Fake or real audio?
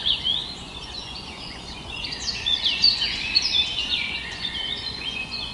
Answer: fake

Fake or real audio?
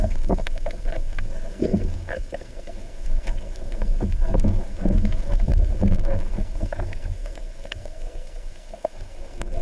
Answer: fake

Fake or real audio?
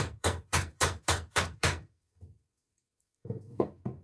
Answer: fake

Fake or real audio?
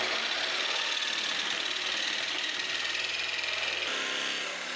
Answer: real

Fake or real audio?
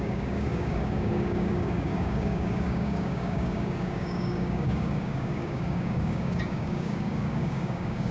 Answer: fake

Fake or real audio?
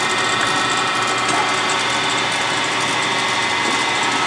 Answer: real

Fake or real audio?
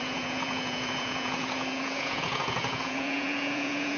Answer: fake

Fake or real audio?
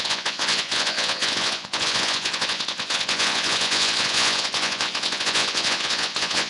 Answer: fake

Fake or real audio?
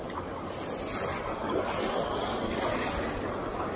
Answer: real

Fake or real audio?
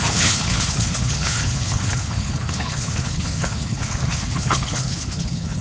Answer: fake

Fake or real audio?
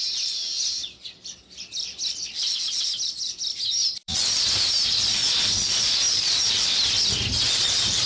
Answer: fake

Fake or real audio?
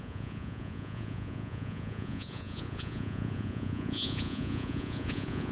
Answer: fake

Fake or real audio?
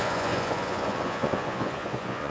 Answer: fake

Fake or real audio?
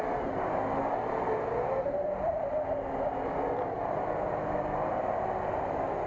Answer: real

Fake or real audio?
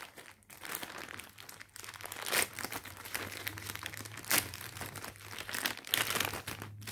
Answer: real